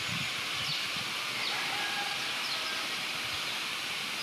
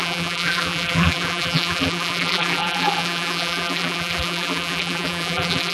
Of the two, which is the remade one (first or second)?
second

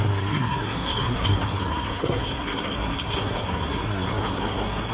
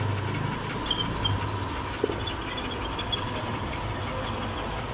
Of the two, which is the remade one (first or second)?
first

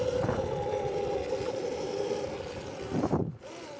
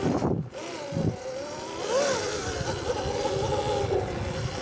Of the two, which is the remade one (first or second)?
first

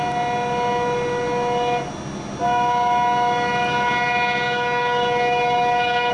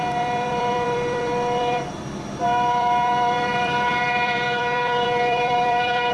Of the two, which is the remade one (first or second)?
second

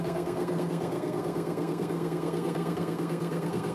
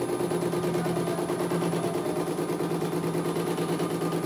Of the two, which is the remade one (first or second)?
first